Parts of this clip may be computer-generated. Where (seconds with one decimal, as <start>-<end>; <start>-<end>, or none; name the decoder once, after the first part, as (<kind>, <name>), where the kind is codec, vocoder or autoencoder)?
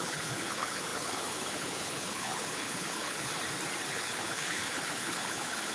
0.0-3.3 (codec, HILCodec); 3.9-5.7